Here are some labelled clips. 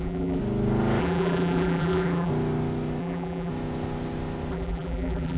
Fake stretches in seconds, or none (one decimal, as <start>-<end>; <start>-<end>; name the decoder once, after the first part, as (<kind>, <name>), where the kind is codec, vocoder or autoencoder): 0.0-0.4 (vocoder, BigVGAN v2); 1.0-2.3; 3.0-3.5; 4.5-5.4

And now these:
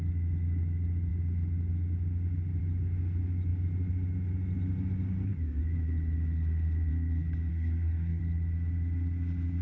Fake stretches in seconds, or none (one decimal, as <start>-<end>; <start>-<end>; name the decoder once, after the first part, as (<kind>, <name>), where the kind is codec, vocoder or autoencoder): 7.5-8.2 (codec, SNAC)

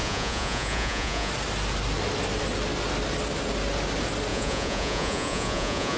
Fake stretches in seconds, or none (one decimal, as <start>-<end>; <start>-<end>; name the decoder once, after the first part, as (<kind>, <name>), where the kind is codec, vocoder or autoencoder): 0.0-1.3 (vocoder, Vocos); 4.3-6.0

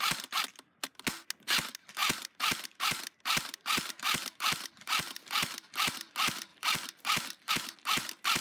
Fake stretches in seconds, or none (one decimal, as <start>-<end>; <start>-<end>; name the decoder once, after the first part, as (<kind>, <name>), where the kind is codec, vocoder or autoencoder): 2.0-5.9 (vocoder, BigVGAN v2); 6.5-7.5

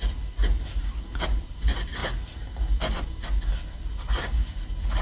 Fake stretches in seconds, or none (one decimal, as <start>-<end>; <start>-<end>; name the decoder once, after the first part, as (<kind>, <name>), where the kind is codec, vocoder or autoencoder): 0.0-2.0 (vocoder, BigVGAN v2); 4.1-5.0

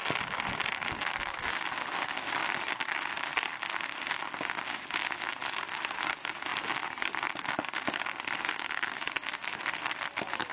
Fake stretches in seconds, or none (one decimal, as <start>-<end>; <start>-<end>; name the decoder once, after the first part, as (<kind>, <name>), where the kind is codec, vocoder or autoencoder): none

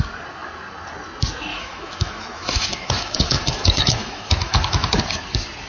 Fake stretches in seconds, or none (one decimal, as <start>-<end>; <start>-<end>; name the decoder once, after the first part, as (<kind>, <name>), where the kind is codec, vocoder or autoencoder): 1.5-4.9 (autoencoder, DAC-VAE)